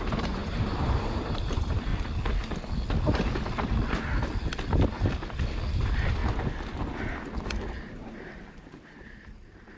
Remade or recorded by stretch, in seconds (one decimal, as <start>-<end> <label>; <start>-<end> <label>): 0.0-1.9 remade; 1.9-5.7 recorded; 5.7-6.2 remade; 6.2-7.8 recorded; 7.8-9.8 remade